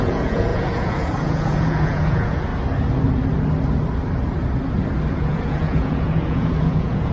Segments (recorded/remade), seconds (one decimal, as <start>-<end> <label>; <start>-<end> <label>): 0.0-2.5 remade; 2.5-5.1 recorded; 5.1-7.1 remade